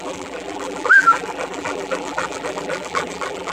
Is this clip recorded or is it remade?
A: remade